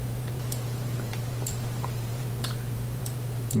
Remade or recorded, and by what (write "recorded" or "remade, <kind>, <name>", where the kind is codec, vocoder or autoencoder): remade, vocoder, BigVGAN v2